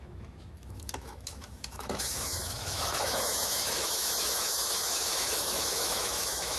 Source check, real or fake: fake